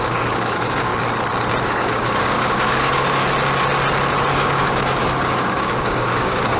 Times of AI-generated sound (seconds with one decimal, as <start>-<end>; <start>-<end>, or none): 0.0-0.9; 1.6-3.2; 4.3-6.6